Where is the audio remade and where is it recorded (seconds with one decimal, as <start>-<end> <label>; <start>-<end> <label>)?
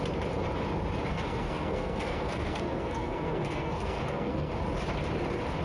0.0-1.1 recorded; 1.1-4.5 remade; 4.5-5.6 recorded